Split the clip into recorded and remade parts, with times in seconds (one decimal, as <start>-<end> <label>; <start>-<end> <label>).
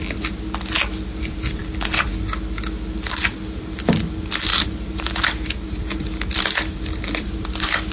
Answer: 0.0-4.5 recorded; 4.5-6.0 remade; 6.0-7.9 recorded